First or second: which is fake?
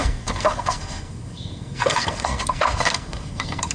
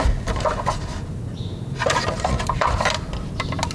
first